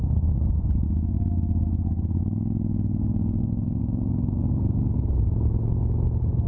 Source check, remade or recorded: recorded